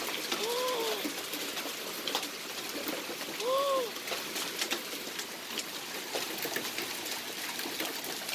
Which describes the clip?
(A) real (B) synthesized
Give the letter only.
A